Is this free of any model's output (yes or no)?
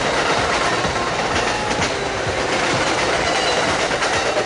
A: yes